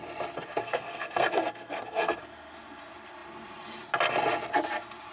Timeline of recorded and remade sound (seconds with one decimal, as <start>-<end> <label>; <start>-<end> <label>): 0.0-0.6 recorded; 0.6-2.2 remade; 2.2-5.1 recorded